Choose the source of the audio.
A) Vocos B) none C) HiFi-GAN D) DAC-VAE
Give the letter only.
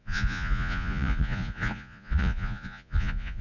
A